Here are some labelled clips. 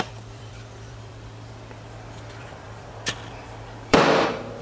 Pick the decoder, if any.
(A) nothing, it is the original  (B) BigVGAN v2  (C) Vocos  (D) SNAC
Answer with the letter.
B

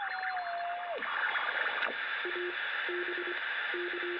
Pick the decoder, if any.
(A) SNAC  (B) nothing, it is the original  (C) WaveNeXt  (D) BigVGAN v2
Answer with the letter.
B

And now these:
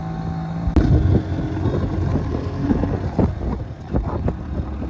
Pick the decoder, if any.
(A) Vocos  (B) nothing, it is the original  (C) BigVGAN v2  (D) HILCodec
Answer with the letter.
B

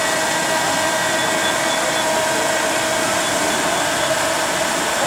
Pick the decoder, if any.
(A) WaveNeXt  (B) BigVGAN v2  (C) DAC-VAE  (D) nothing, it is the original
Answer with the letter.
D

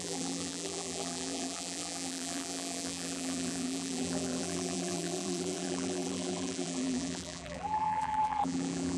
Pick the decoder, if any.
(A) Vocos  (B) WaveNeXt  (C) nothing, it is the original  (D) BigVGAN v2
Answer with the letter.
D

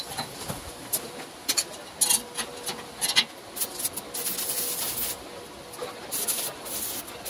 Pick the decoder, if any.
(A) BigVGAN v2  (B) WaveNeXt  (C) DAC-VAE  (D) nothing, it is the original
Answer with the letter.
D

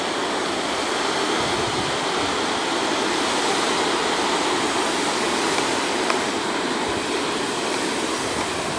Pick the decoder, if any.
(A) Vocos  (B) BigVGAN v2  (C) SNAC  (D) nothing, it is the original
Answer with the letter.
D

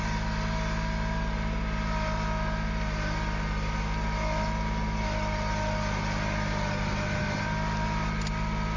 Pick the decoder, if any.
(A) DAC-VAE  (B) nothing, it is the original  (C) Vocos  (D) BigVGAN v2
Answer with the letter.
B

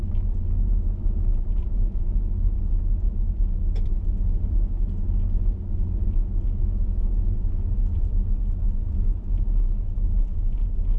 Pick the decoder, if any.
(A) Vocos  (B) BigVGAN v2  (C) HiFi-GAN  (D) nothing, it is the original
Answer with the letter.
D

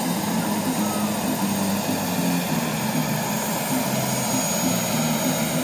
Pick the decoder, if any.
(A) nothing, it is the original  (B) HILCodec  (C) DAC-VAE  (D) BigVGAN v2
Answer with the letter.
A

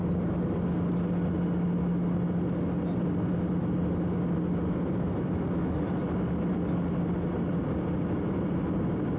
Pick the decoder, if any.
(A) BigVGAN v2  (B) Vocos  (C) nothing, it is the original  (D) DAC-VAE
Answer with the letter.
C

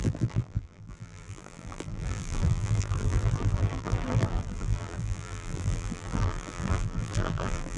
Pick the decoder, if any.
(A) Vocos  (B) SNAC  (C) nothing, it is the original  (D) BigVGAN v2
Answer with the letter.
D